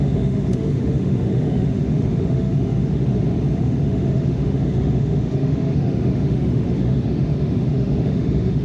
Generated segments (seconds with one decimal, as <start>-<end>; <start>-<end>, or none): 0.0-3.0; 3.6-8.6